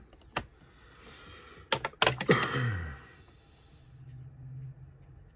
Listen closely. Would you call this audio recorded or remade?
recorded